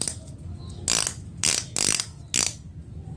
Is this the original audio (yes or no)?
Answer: yes